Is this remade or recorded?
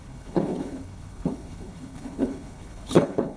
remade